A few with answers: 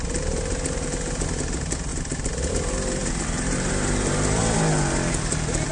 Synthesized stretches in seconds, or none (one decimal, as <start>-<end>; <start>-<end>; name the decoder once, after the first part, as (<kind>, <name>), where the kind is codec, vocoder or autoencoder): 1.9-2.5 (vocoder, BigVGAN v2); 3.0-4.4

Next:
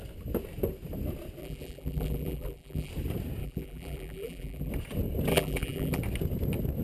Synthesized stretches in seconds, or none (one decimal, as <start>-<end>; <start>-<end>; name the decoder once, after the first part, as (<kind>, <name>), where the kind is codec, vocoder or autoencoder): 1.4-2.9 (vocoder, BigVGAN v2); 3.4-4.7; 5.3-6.0

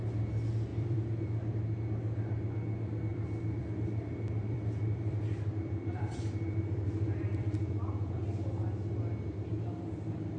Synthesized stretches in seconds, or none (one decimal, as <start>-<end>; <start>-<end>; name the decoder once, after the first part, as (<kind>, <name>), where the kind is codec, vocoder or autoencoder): 0.7-1.6 (vocoder, BigVGAN v2); 3.1-8.2

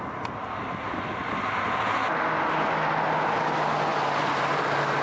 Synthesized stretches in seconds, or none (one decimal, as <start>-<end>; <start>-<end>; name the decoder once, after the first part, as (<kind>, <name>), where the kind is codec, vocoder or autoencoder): 3.9-4.6 (vocoder, BigVGAN v2)

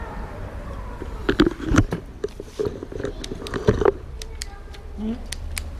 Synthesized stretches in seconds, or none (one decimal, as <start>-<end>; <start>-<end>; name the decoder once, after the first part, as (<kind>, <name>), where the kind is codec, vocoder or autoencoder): 0.0-1.2 (vocoder, BigVGAN v2); 1.7-2.6; 3.5-5.8

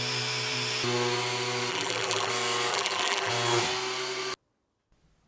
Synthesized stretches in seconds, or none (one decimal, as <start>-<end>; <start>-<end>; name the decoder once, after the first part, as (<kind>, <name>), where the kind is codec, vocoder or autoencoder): 1.7-2.3 (vocoder, BigVGAN v2); 2.7-3.3